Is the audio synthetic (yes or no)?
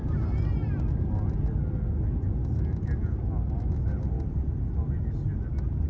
no